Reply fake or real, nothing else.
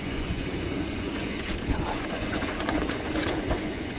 fake